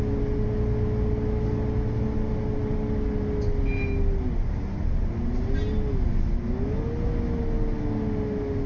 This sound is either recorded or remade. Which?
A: recorded